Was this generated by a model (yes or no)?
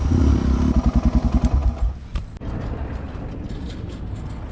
no